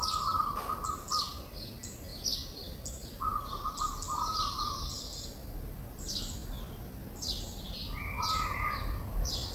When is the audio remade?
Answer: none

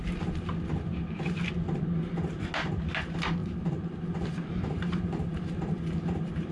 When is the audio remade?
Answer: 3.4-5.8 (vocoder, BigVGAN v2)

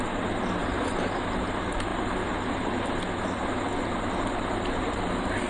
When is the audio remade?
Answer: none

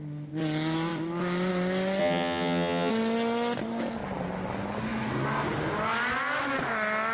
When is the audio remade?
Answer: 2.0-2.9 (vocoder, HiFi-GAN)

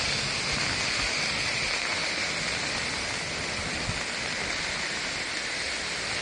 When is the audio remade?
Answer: none

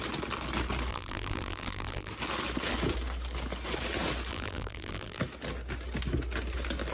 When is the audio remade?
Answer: 0.9-2.1 (vocoder, BigVGAN v2); 4.3-5.2

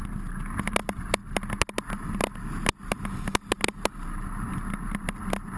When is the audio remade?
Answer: none

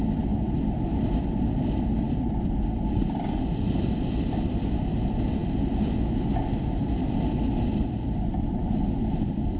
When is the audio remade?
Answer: 0.0-5.4 (vocoder, BigVGAN v2); 6.6-9.6